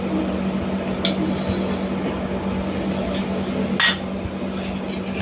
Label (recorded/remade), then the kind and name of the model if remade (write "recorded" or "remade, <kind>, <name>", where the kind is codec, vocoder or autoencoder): recorded